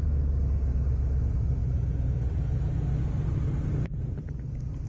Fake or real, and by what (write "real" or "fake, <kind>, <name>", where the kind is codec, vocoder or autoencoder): real